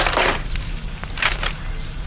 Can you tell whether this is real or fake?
fake